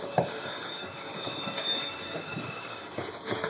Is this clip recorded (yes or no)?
no